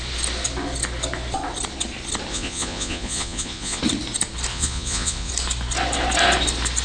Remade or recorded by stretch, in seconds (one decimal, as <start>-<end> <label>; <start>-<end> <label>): 0.0-2.3 recorded; 2.3-3.8 remade; 3.8-4.5 recorded; 4.5-5.3 remade; 5.3-6.8 recorded